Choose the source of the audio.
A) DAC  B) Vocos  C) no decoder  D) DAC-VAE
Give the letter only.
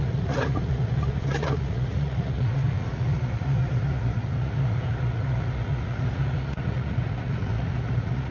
B